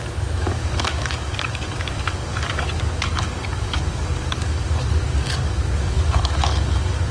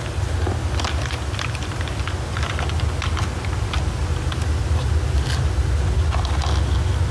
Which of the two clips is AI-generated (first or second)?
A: first